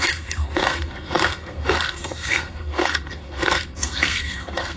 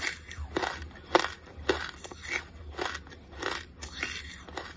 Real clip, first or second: second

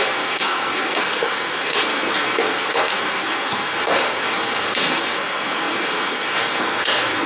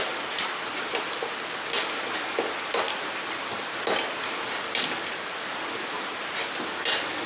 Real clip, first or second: second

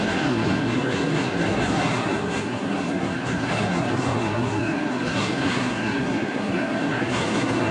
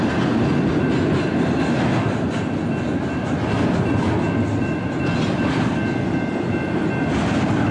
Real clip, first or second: second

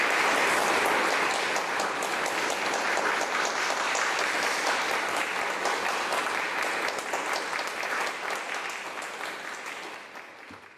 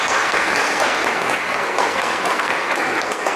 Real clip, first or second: first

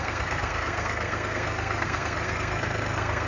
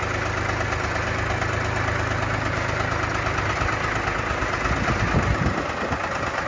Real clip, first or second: second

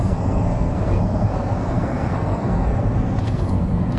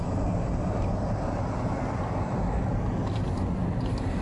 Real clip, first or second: second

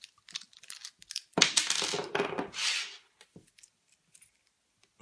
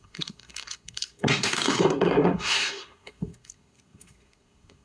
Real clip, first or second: first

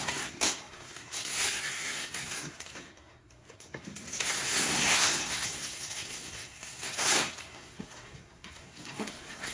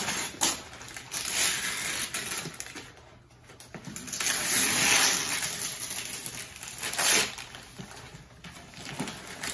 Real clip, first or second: second